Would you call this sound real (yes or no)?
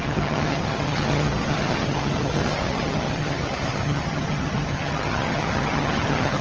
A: no